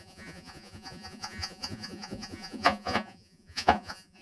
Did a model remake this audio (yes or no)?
yes